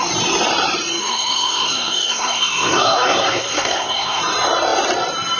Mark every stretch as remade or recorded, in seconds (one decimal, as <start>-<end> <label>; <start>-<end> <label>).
0.0-1.0 recorded; 1.0-4.2 remade; 4.2-5.4 recorded

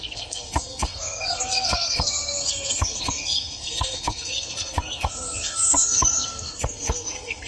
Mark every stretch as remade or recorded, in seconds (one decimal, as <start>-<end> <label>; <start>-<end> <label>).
0.0-7.5 remade

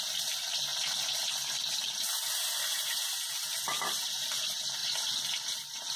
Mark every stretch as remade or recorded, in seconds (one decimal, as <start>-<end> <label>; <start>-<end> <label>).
0.0-6.0 recorded

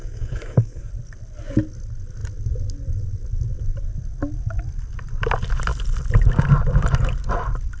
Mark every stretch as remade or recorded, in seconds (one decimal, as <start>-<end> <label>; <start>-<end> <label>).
0.0-0.9 remade; 0.9-7.8 recorded

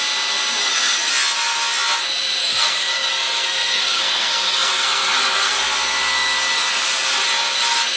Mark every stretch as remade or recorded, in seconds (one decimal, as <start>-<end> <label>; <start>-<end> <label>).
0.0-0.6 recorded; 0.6-1.1 remade; 1.1-2.4 recorded; 2.4-5.6 remade; 5.6-8.0 recorded

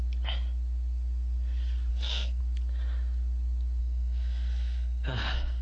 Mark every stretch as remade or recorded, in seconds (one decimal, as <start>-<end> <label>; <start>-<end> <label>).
0.0-1.9 recorded; 1.9-2.4 remade; 2.4-3.8 recorded; 3.8-5.6 remade